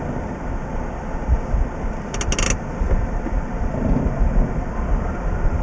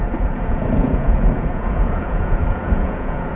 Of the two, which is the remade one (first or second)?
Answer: second